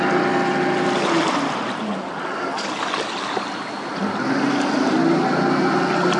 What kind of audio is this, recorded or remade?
recorded